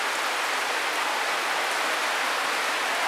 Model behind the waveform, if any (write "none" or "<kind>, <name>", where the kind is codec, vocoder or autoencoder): none